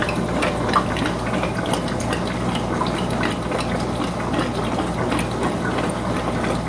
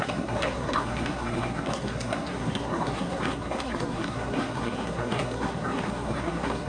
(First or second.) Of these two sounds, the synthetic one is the second